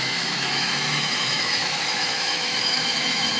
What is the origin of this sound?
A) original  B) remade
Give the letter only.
B